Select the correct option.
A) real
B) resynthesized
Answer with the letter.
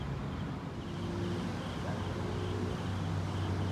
A